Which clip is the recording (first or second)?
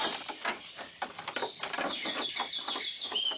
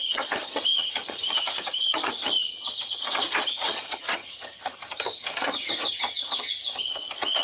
first